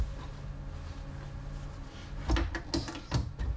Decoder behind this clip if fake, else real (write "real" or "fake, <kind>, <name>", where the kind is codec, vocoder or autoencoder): real